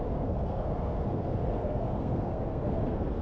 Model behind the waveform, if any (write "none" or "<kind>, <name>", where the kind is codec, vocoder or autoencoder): codec, SNAC